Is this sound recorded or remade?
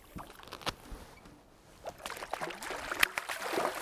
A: recorded